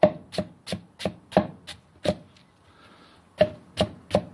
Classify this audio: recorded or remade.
recorded